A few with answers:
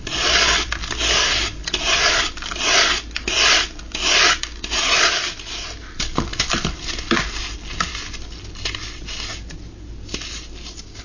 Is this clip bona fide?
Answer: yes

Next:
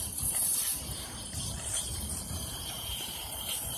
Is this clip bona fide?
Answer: no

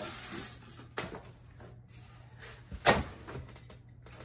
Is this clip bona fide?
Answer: yes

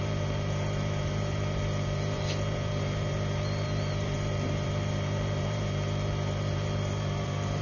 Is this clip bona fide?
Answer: no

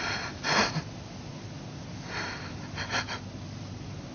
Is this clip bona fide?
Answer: yes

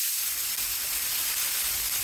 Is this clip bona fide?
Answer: no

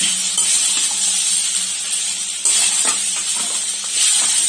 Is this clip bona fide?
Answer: yes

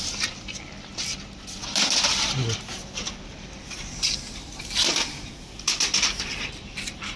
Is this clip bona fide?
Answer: yes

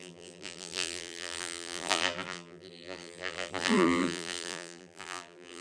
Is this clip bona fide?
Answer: no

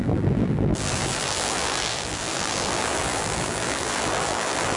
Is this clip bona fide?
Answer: no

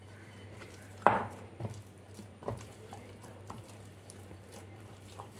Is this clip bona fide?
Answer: no